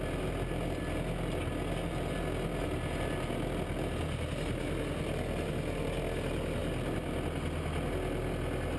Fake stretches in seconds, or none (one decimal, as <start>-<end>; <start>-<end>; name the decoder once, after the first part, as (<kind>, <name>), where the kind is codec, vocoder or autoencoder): none